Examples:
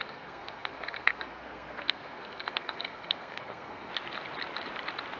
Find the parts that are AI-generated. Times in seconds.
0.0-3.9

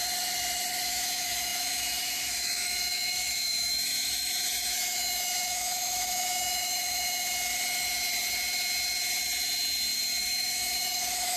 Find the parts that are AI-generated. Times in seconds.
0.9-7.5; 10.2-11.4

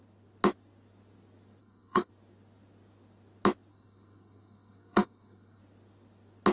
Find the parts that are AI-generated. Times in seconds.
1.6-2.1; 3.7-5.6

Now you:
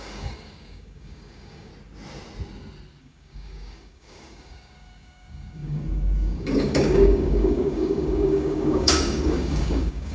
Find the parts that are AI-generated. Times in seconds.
0.0-1.7; 3.0-10.1

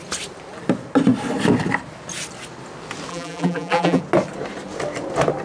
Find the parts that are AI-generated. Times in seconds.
3.1-4.0

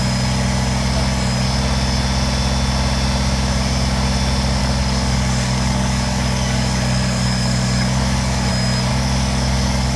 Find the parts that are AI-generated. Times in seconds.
4.6-8.5; 8.9-10.0

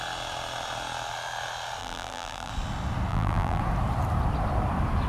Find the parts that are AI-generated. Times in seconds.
1.8-2.5; 3.1-3.6

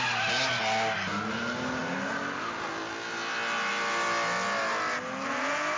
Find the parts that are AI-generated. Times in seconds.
none